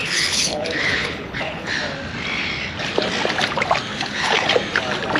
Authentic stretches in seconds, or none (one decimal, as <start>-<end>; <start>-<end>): 1.7-3.9; 4.5-5.2

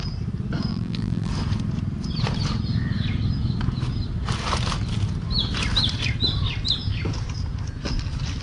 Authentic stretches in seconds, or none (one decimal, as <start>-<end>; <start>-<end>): 0.0-0.7; 1.3-8.4

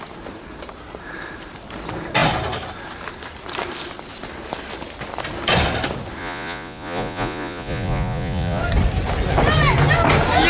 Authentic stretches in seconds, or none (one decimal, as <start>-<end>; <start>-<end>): 0.0-6.2; 8.6-10.5

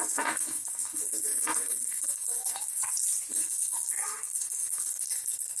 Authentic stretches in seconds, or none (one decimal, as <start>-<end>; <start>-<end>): 2.8-3.3

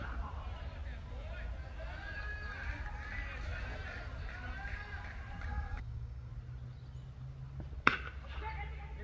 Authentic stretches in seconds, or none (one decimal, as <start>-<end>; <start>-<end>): 0.0-5.5; 6.3-9.0

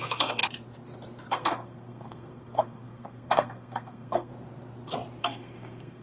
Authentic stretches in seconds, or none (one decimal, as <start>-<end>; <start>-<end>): 0.4-1.3; 4.3-5.2

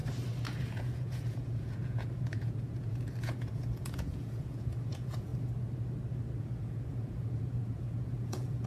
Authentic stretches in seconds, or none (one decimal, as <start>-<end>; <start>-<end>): 0.0-0.6; 5.3-6.4